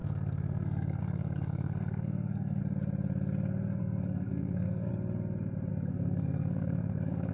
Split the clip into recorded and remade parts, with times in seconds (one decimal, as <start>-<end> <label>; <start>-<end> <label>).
0.0-2.6 remade; 2.6-3.8 recorded; 3.8-4.9 remade; 4.9-5.7 recorded; 5.7-7.3 remade

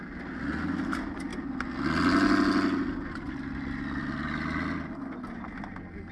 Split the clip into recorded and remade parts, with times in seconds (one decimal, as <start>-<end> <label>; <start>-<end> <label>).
0.0-6.1 recorded